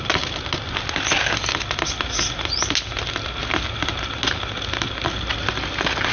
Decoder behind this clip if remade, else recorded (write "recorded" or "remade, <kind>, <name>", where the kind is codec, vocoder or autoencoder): recorded